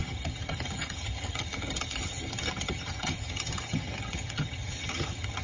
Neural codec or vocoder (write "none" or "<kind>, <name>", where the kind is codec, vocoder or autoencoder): vocoder, HiFi-GAN